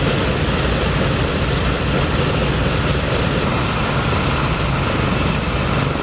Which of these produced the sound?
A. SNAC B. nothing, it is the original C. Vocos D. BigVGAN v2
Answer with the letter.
B